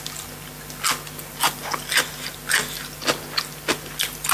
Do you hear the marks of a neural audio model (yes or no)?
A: no